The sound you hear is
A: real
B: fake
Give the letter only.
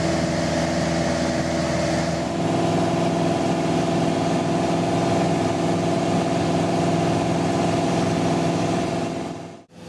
A